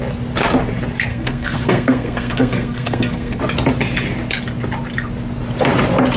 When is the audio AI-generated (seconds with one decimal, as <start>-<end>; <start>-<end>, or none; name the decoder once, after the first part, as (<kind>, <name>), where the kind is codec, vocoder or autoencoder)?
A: 1.1-3.4 (codec, SNAC)